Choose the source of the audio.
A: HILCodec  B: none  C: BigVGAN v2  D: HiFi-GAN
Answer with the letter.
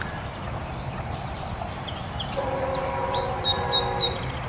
C